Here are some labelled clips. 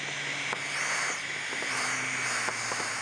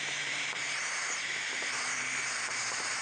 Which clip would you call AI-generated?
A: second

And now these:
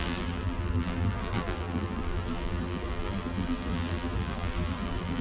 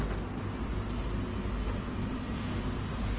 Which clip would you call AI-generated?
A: first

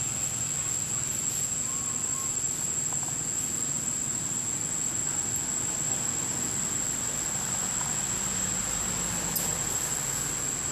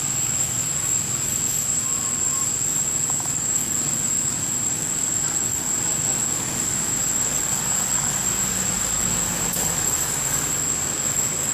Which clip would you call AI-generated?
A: second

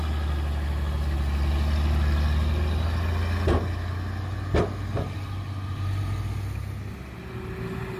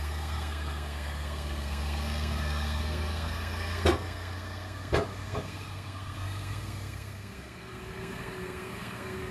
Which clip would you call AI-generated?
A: second